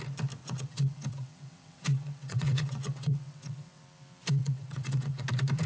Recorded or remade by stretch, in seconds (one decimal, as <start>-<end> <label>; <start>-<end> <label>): 0.0-0.4 recorded; 0.4-3.8 remade; 3.8-4.4 recorded; 4.4-5.2 remade; 5.2-5.7 recorded